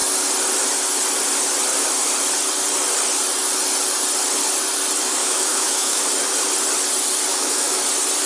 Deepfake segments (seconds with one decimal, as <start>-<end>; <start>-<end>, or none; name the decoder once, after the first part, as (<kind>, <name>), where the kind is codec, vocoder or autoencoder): 5.2-6.0 (autoencoder, DAC-VAE); 7.3-7.8